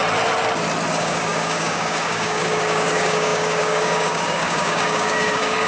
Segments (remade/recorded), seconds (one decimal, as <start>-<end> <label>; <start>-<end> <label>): 0.0-0.9 recorded; 0.9-5.7 remade